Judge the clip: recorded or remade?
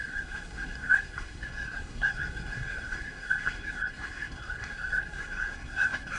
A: remade